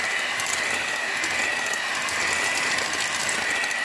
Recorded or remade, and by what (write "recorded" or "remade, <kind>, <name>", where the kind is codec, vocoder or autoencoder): recorded